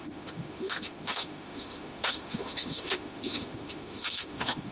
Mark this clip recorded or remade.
remade